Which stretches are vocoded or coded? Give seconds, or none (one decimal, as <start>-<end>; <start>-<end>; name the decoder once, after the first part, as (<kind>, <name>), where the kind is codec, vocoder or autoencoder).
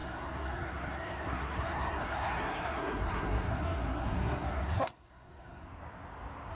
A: 0.0-5.7 (codec, SNAC)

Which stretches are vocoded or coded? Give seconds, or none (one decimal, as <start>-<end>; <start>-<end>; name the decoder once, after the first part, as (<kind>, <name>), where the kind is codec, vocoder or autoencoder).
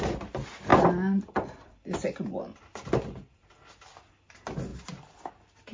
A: 4.7-5.3 (vocoder, BigVGAN v2)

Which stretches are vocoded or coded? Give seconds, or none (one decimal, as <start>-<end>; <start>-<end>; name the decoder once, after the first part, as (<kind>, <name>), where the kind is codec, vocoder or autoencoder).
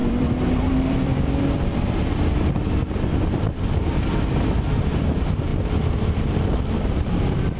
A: 0.0-4.6 (vocoder, BigVGAN v2); 5.5-7.6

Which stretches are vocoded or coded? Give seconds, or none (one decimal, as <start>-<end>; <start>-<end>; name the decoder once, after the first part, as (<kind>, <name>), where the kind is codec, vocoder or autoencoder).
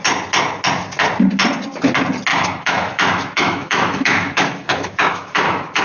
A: 2.3-5.8 (autoencoder, DAC-VAE)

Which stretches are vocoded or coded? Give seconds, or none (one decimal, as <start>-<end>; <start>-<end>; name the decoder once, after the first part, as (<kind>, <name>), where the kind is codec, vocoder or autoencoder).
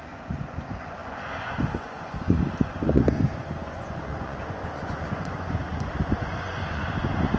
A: 0.0-7.4 (vocoder, Vocos)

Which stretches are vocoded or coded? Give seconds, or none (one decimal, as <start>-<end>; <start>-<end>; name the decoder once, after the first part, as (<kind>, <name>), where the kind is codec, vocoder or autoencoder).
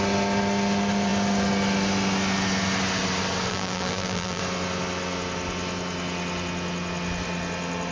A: 3.5-4.4 (vocoder, BigVGAN v2)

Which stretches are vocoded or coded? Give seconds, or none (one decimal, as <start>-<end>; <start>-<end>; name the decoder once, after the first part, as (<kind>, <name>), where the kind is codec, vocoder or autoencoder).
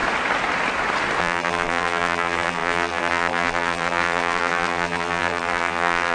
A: 1.2-6.1 (vocoder, BigVGAN v2)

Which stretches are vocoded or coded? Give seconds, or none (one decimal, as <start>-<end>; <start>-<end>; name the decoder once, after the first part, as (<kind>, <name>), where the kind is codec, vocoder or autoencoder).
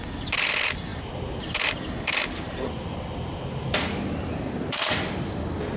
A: none